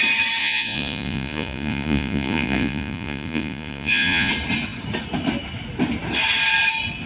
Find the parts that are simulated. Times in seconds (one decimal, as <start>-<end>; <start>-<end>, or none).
0.4-4.3